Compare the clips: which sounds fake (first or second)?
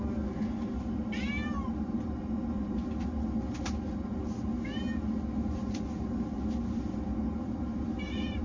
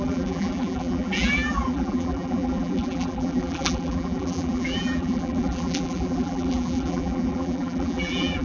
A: second